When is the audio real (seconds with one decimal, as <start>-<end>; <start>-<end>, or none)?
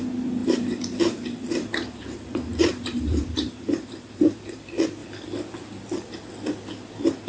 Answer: 0.0-0.4; 4.2-7.3